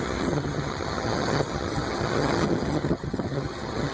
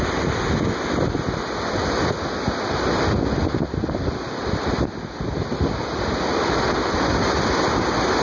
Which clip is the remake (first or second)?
first